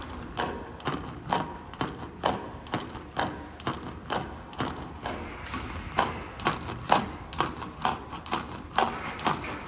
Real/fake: fake